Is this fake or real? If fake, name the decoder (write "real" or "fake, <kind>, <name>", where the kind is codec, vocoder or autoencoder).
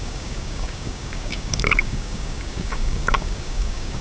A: fake, codec, DAC